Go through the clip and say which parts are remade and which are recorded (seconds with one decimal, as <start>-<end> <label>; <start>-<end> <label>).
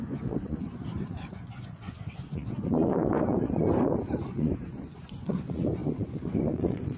0.0-7.0 remade